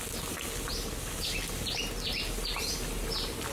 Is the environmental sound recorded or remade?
recorded